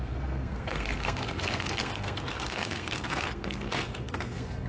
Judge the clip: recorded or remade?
remade